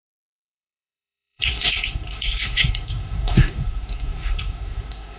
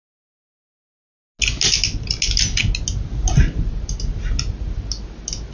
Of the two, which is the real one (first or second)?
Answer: second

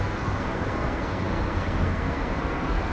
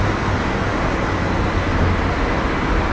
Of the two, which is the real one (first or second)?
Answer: second